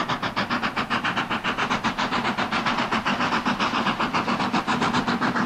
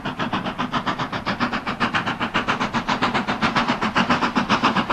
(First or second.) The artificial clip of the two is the second